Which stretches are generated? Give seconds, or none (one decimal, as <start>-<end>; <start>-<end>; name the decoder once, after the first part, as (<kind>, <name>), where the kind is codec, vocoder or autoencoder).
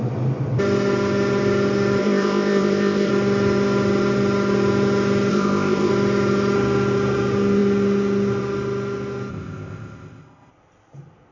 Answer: 2.0-3.1 (codec, ZipCodec); 5.3-5.9; 9.3-10.5